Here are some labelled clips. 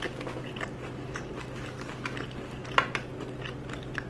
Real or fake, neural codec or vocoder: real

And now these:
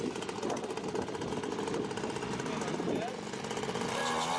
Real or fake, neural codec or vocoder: real